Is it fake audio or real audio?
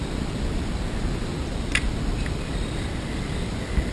real